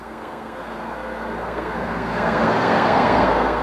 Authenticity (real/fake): fake